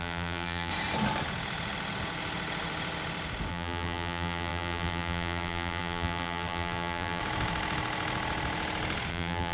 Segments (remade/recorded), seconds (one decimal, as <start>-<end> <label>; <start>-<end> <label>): 0.0-0.7 remade; 0.7-3.5 recorded; 3.5-7.2 remade; 7.2-9.1 recorded; 9.1-9.5 remade